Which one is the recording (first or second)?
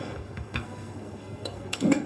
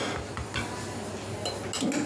second